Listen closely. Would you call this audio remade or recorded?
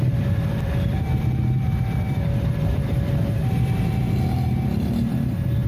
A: remade